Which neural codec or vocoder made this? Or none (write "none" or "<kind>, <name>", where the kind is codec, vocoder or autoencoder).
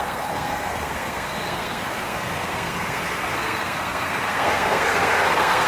codec, SNAC